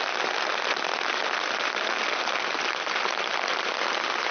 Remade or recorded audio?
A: recorded